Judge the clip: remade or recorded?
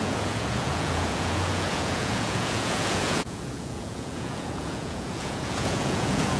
remade